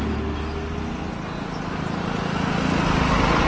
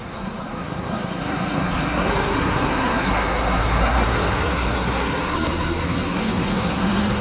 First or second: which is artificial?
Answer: second